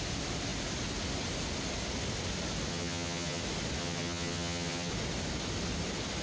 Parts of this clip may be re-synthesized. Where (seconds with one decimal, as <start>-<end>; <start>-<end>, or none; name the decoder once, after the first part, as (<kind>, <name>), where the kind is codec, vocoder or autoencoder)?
2.7-3.4 (vocoder, HiFi-GAN); 3.8-4.9